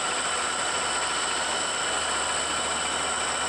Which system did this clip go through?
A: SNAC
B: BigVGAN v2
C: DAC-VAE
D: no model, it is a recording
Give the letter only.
D